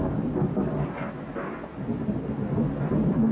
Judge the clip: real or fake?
real